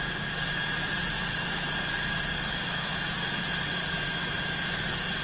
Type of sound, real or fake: fake